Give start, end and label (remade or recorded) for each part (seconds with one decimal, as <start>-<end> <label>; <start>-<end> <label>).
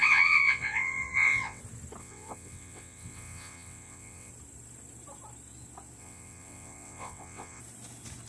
0.0-1.6 remade; 1.6-2.0 recorded; 2.0-4.3 remade; 4.3-6.0 recorded; 6.0-7.6 remade; 7.6-8.3 recorded